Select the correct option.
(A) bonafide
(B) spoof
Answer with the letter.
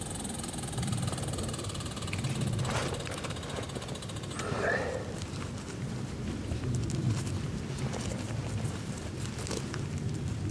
B